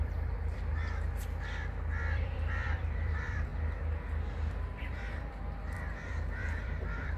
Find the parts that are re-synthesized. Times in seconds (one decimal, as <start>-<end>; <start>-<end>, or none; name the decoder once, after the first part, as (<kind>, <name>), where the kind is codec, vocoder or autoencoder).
0.0-0.7 (vocoder, BigVGAN v2); 2.0-3.5; 4.8-7.2